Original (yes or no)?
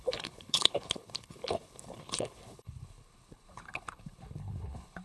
no